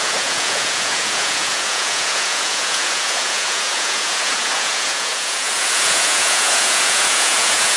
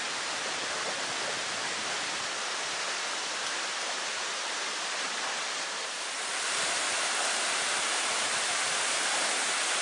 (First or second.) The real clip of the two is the second